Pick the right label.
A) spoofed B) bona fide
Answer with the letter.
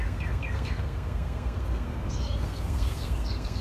A